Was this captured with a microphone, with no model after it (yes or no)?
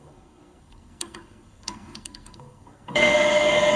no